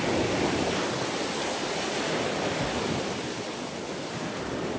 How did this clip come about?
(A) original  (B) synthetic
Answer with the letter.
A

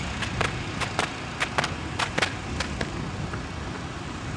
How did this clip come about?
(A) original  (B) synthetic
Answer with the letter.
A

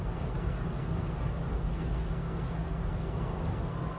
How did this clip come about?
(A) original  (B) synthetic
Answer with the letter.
B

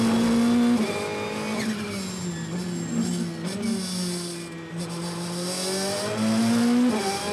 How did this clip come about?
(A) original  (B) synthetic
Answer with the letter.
A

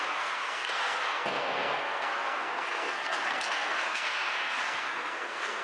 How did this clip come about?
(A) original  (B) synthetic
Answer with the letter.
B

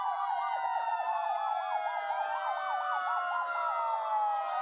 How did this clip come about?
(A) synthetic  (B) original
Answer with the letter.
B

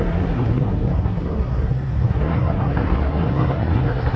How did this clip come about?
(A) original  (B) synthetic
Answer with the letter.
B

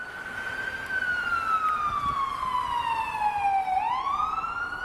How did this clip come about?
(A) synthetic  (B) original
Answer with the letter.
B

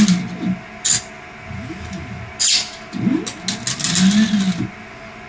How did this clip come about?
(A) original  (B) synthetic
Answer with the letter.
A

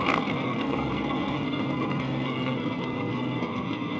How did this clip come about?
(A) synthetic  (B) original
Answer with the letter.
A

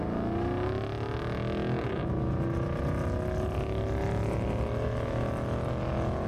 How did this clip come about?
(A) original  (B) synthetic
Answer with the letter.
A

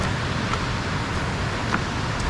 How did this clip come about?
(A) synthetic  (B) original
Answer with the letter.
B